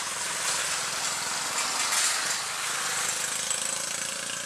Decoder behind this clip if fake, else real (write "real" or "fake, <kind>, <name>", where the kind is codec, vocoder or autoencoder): real